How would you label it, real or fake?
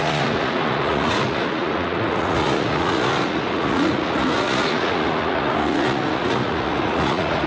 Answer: fake